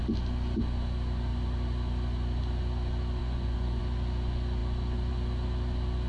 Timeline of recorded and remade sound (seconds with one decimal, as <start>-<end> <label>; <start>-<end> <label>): 0.0-3.2 recorded; 3.2-3.8 remade; 3.8-6.1 recorded